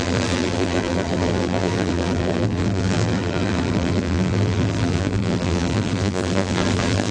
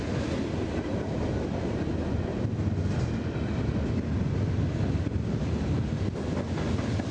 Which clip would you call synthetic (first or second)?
first